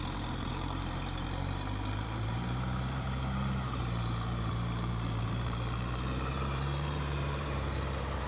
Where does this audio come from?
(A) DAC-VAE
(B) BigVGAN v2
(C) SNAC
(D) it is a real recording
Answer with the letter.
B